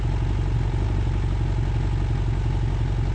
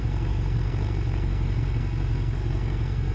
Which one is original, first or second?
first